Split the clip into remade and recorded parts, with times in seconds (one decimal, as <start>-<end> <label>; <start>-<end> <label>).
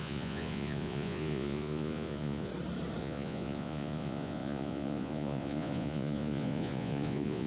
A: 0.0-2.5 remade; 2.5-3.0 recorded; 3.0-7.5 remade